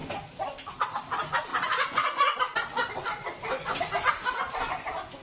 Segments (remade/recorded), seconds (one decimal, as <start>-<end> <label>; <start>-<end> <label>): 0.0-5.2 recorded